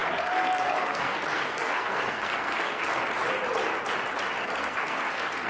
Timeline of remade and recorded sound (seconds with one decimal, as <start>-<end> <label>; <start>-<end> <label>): 0.0-3.0 remade; 3.0-4.4 recorded; 4.4-5.5 remade